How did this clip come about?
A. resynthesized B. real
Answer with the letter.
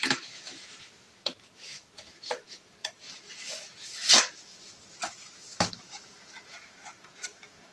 A